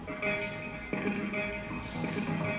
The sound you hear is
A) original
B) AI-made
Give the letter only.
A